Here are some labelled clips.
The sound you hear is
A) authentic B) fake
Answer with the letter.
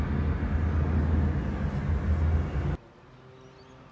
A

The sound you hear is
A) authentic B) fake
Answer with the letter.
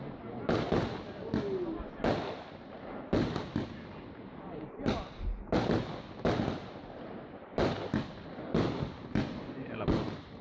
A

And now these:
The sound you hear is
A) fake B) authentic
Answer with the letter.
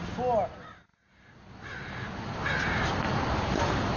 B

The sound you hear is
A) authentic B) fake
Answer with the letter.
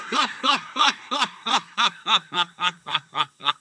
B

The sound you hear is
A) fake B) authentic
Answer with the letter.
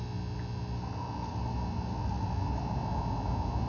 B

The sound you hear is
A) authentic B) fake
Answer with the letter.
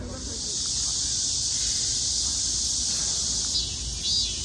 A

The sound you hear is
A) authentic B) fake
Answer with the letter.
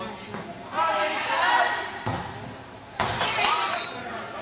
A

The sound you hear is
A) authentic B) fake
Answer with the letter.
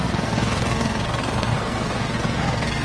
B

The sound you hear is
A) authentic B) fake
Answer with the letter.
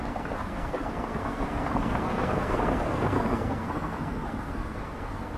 B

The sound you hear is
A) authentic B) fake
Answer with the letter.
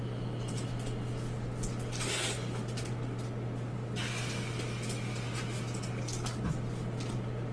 A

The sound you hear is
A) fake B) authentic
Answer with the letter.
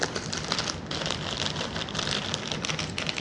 B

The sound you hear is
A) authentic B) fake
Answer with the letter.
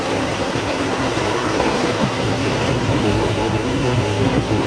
B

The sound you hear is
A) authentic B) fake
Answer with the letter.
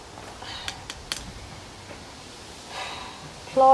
A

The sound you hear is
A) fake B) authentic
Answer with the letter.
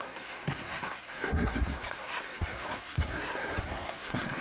A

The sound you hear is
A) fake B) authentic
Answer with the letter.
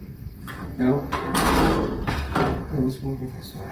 A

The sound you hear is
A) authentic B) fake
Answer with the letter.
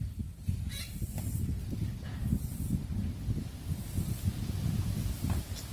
A